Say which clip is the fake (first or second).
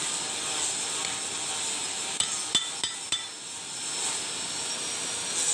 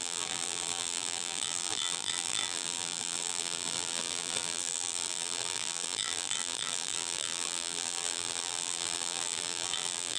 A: second